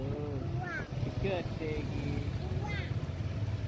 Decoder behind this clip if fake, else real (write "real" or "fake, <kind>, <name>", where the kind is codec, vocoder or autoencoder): real